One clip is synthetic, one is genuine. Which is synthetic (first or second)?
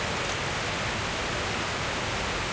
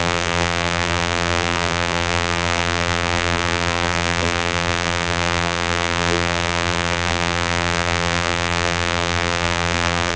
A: second